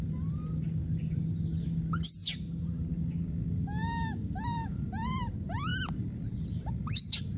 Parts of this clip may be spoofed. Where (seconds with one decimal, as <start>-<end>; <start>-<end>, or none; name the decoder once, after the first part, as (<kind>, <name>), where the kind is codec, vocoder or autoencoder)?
none